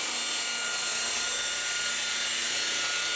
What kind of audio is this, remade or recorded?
recorded